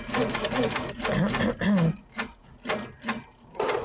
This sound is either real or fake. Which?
real